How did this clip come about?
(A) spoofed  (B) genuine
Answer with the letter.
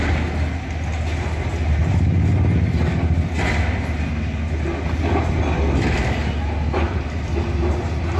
B